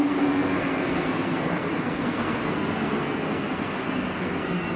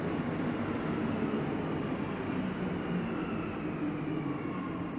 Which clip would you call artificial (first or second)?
first